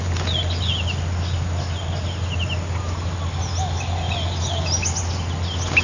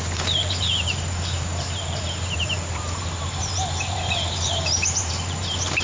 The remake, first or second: second